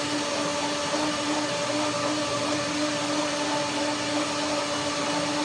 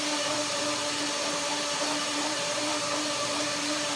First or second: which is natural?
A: first